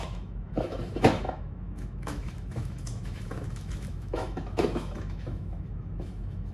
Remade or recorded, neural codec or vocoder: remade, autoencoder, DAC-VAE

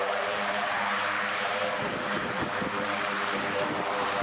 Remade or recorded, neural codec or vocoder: remade, vocoder, BigVGAN v2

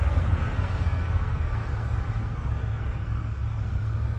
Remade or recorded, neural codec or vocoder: remade, codec, SNAC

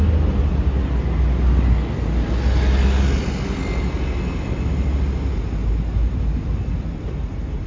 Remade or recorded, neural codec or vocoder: recorded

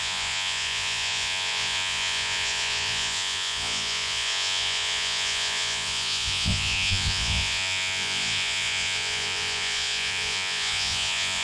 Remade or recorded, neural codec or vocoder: remade, vocoder, Vocos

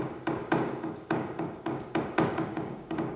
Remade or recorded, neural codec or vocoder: remade, codec, DAC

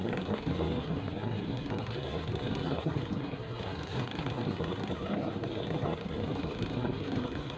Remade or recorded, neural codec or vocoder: remade, codec, SNAC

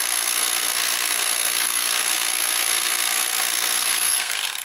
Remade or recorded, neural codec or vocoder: remade, codec, SNAC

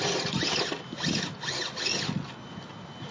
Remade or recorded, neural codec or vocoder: recorded